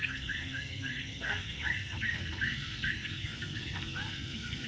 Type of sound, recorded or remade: remade